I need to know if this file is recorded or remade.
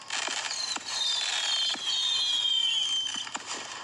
recorded